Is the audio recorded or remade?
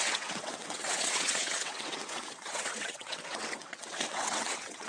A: remade